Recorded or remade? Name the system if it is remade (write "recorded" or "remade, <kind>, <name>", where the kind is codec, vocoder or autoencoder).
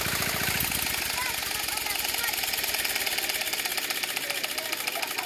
recorded